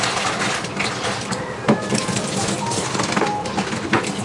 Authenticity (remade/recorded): recorded